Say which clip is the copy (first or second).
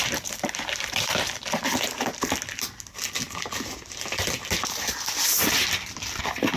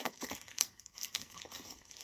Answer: second